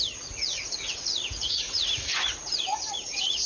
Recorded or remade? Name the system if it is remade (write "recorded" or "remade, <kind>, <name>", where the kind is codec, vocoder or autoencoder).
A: remade, vocoder, Vocos